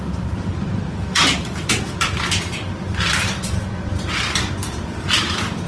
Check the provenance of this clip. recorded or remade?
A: remade